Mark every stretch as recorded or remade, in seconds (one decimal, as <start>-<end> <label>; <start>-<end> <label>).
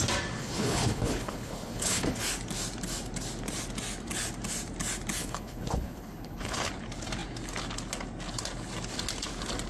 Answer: 0.0-0.4 recorded; 0.4-2.2 remade; 2.2-5.2 recorded; 5.2-6.7 remade; 6.7-9.7 recorded